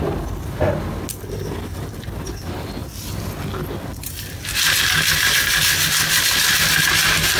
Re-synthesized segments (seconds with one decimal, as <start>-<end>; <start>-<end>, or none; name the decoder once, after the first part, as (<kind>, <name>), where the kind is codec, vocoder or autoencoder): 2.8-3.5 (vocoder, BigVGAN v2)